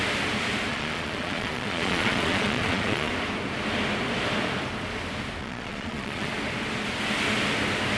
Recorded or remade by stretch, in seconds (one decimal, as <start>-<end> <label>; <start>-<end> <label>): 0.0-0.7 recorded; 0.7-3.1 remade; 3.1-5.4 recorded; 5.4-6.3 remade; 6.3-8.0 recorded